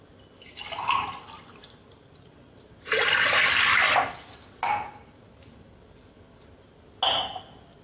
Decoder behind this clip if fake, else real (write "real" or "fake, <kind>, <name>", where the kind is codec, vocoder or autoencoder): real